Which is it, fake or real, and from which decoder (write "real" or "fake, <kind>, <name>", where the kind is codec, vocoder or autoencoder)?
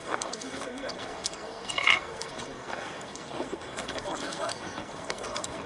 fake, codec, SNAC